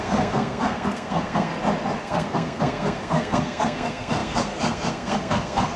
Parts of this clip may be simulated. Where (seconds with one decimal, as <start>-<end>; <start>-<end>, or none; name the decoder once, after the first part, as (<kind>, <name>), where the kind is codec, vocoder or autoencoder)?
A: 0.0-1.5 (codec, SNAC); 2.0-5.8